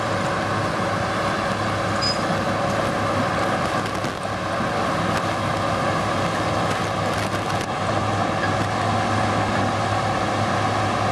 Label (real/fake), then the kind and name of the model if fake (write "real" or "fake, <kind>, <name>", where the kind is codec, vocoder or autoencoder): real